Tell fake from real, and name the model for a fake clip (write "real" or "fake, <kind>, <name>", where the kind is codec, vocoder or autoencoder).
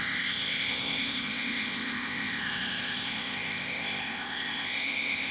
fake, codec, ZipCodec